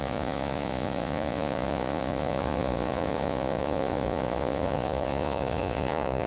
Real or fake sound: fake